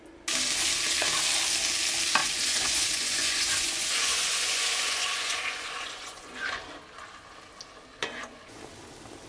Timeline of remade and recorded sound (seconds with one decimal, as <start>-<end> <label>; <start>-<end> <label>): 0.0-2.2 recorded; 2.2-6.6 remade; 6.6-8.0 recorded; 8.0-8.6 remade; 8.6-9.3 recorded